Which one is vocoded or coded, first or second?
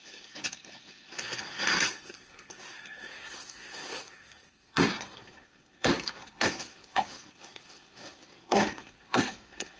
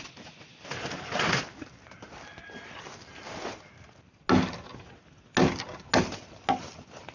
first